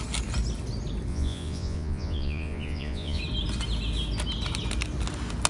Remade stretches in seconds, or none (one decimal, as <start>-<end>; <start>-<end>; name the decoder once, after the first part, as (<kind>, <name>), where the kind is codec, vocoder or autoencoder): 1.1-3.2 (vocoder, Vocos)